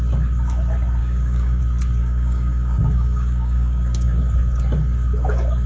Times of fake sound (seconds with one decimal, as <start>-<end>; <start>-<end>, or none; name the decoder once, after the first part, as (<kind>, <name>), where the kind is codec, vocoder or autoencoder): 1.0-1.6 (codec, DAC); 2.0-4.2